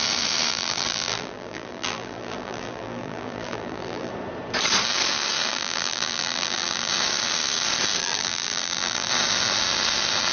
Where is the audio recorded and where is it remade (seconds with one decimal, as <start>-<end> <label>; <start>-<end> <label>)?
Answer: 0.0-0.5 recorded; 0.5-4.1 remade; 4.1-5.5 recorded; 5.5-6.9 remade; 6.9-8.0 recorded; 8.0-9.1 remade; 9.1-10.3 recorded